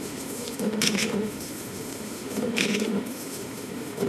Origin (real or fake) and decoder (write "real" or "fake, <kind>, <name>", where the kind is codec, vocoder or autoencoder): fake, autoencoder, DAC-VAE